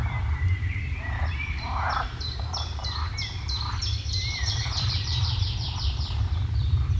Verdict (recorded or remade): remade